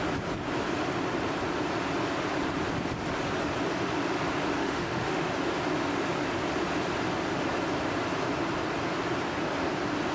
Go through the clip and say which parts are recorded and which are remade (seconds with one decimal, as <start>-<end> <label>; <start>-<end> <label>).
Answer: 0.0-4.6 recorded; 4.6-5.3 remade; 5.3-10.1 recorded